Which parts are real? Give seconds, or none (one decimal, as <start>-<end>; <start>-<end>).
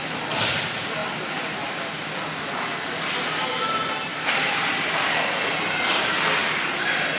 0.0-1.0; 1.7-4.1; 6.0-7.2